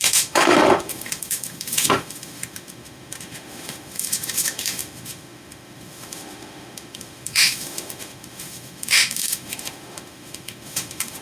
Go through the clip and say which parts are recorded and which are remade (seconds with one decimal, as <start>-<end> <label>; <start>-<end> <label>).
0.0-11.2 remade